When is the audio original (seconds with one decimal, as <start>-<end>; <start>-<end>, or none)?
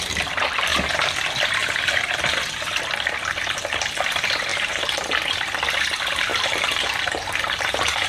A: 0.0-0.7; 1.2-4.5; 5.2-6.3